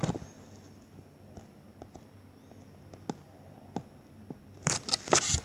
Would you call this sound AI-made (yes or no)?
no